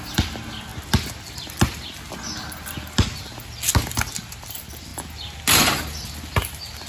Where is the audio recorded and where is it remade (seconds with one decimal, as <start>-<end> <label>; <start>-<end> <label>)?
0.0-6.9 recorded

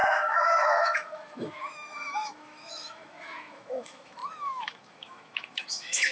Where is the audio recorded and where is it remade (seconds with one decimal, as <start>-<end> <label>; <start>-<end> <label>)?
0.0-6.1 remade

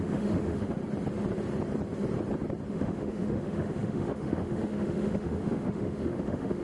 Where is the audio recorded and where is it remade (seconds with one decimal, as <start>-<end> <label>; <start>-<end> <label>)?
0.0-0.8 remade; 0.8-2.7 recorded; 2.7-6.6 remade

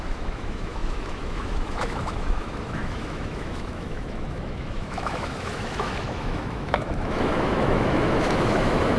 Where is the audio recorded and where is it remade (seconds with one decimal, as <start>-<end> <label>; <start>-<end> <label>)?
0.0-9.0 remade